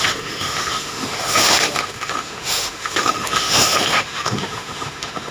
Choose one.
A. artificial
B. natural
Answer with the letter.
A